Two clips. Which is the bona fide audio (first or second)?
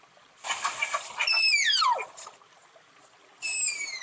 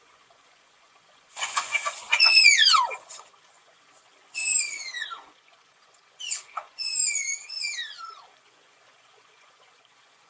first